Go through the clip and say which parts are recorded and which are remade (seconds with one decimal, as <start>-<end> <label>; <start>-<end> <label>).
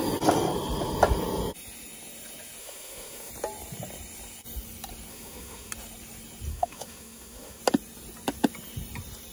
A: 0.0-2.6 recorded; 2.6-3.3 remade; 3.3-5.1 recorded; 5.1-5.7 remade; 5.7-6.5 recorded; 6.5-7.6 remade; 7.6-9.3 recorded